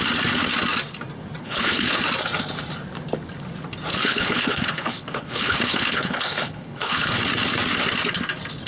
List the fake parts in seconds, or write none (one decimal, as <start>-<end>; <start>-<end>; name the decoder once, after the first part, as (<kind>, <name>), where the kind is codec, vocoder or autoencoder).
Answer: 1.4-2.0 (codec, HILCodec); 3.9-7.2

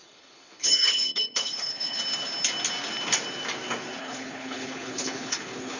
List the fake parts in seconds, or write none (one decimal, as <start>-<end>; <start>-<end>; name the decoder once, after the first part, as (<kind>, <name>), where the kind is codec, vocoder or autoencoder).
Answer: 0.0-2.0 (codec, HILCodec); 4.0-5.8

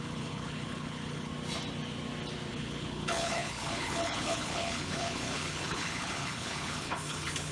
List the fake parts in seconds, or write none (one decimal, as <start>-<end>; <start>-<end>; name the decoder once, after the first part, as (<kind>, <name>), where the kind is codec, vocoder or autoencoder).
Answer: 0.0-1.3 (codec, HILCodec); 2.5-7.5

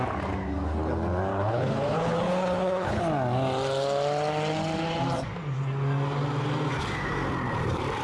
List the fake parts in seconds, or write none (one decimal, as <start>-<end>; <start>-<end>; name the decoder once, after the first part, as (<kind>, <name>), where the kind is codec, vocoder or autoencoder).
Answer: 1.3-3.0 (codec, HILCodec)

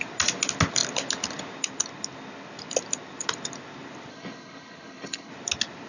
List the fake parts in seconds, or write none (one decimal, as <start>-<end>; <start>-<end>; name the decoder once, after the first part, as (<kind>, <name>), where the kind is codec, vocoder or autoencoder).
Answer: 4.1-5.3 (codec, HILCodec)

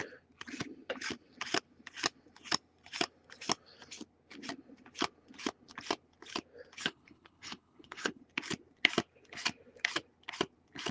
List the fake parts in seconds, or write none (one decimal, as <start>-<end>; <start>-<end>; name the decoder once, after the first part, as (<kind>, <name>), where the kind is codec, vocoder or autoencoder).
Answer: 6.8-8.2 (codec, HILCodec)